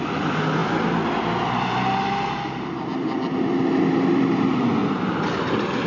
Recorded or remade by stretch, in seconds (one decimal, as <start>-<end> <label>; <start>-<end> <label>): 0.0-0.6 recorded; 0.6-3.6 remade; 3.6-4.8 recorded; 4.8-5.3 remade; 5.3-5.9 recorded